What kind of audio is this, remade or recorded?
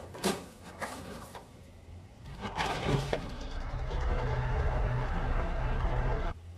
remade